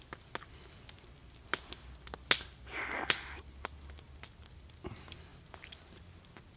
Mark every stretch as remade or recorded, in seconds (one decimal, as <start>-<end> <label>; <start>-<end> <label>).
0.0-6.6 recorded